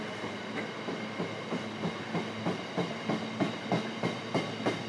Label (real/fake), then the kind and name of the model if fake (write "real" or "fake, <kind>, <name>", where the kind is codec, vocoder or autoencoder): real